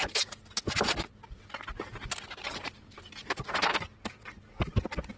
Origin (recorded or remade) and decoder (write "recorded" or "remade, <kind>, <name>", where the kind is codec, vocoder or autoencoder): recorded